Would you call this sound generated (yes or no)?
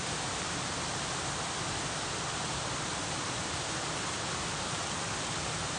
yes